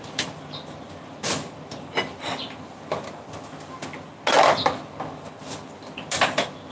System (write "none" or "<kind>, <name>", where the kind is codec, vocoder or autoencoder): none